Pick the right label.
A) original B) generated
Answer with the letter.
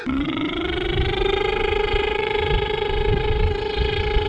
B